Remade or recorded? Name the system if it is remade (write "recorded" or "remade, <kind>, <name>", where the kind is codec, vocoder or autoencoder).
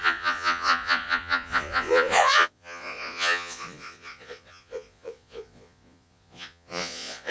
remade, vocoder, Vocos